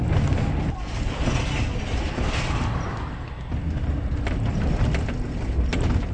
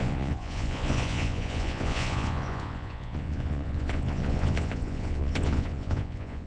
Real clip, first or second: first